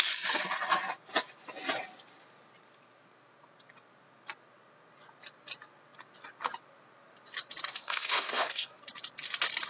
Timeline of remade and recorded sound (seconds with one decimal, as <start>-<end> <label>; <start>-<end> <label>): 0.0-7.8 recorded; 7.8-8.8 remade; 8.8-9.7 recorded